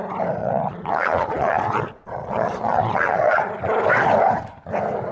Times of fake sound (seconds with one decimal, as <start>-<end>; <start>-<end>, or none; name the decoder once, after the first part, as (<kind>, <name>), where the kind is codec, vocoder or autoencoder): 0.4-3.5 (vocoder, Vocos)